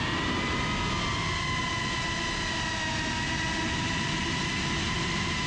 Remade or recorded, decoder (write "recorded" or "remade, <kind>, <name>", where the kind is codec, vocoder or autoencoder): recorded